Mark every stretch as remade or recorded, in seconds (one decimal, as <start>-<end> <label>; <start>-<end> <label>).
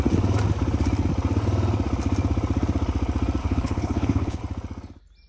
0.0-3.4 recorded; 3.4-4.4 remade; 4.4-5.3 recorded